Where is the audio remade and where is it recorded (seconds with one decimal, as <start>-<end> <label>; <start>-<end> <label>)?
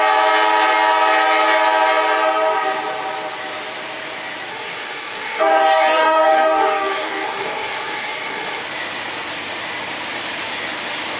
0.0-4.5 recorded; 4.5-8.6 remade; 8.6-11.2 recorded